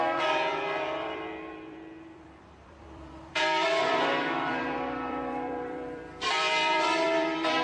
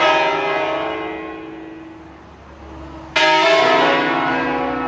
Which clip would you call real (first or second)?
second